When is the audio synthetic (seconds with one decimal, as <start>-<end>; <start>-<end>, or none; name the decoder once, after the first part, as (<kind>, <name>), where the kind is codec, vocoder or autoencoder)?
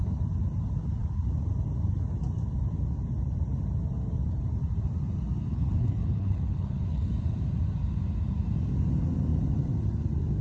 5.5-7.1 (codec, HILCodec)